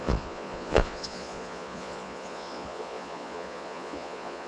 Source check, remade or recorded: remade